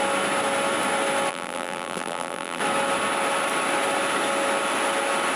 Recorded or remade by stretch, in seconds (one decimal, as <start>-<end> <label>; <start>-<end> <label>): 0.0-1.3 recorded; 1.3-2.6 remade; 2.6-5.4 recorded